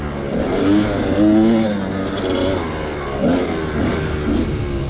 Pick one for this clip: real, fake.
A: real